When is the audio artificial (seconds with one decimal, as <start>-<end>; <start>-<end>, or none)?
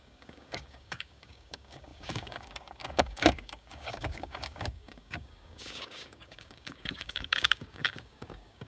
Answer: 0.0-8.7